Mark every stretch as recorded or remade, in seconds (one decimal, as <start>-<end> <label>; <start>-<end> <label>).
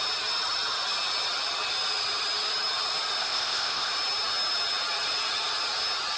0.0-3.2 recorded; 3.2-3.9 remade; 3.9-6.2 recorded